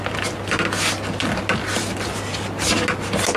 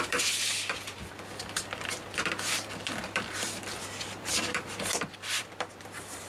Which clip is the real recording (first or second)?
first